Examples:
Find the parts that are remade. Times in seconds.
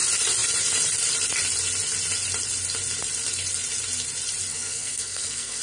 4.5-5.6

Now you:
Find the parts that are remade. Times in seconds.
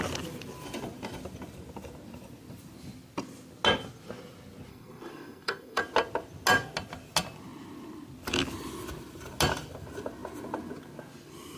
4.7-5.8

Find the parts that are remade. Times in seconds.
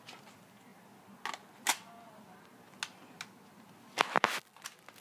none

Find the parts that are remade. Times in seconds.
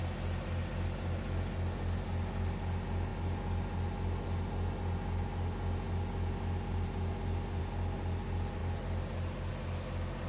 none